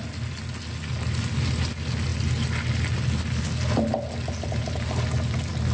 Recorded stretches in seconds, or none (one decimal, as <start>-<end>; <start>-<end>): 0.0-5.7